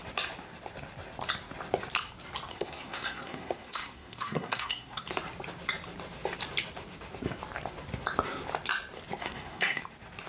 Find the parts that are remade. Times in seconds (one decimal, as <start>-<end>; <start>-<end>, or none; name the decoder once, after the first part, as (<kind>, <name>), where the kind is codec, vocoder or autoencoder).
2.5-5.1 (codec, SNAC); 9.2-9.8